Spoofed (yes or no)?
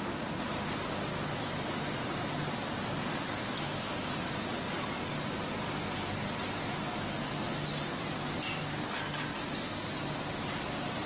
no